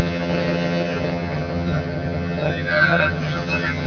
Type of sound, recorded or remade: remade